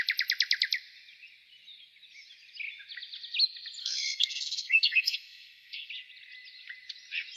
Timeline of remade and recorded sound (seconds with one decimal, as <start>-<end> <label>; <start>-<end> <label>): 0.0-3.8 recorded; 3.8-5.9 remade; 5.9-7.4 recorded